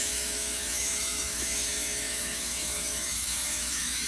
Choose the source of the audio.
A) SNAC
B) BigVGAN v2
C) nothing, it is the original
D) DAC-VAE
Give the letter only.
D